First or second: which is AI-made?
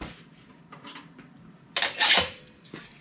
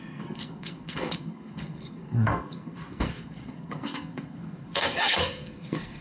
second